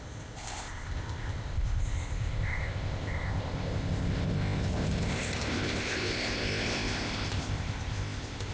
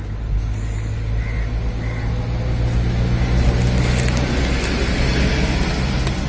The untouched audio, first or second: second